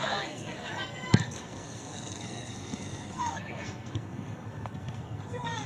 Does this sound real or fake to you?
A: fake